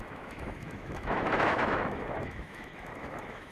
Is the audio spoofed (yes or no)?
yes